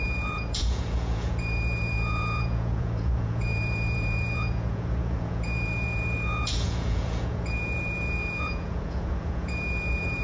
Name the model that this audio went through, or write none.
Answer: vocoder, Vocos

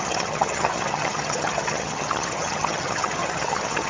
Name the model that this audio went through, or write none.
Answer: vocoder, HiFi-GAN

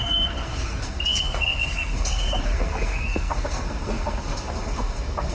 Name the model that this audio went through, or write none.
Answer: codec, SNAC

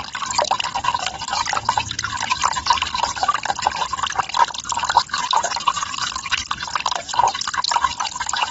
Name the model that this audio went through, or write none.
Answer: none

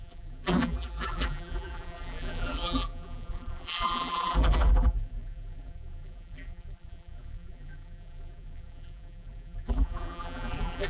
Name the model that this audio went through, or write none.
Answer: vocoder, BigVGAN v2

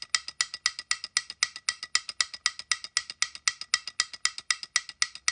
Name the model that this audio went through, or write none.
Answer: none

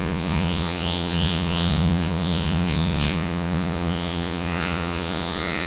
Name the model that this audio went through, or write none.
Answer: vocoder, Vocos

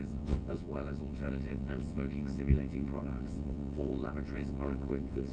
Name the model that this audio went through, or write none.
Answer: vocoder, WaveNeXt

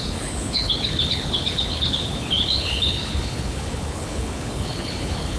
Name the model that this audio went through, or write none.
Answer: codec, HILCodec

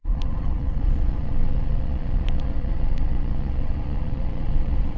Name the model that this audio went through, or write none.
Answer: vocoder, Vocos